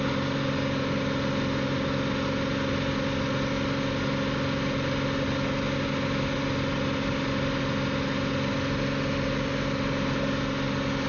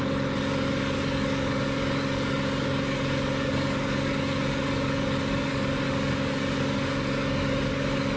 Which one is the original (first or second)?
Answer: first